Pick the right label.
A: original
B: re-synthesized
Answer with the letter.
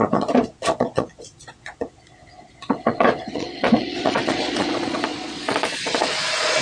B